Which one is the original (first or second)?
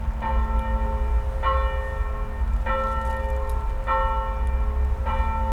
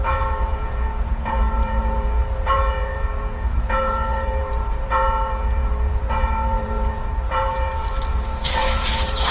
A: first